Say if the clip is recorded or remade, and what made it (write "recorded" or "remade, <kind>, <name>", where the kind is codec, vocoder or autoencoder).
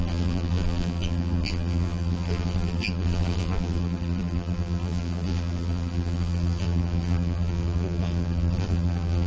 remade, vocoder, BigVGAN v2